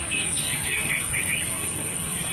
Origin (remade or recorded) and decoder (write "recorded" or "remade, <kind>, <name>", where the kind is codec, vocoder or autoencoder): remade, codec, SNAC